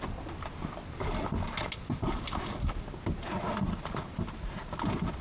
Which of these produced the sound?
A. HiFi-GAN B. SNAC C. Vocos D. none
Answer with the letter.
D